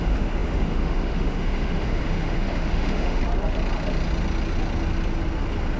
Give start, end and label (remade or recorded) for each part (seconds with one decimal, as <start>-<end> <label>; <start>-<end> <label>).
0.0-3.2 remade; 3.2-5.8 recorded